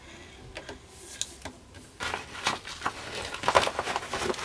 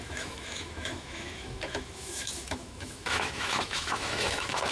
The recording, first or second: first